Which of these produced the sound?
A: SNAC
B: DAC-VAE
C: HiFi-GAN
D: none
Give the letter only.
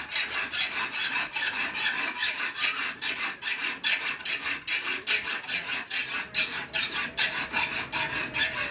D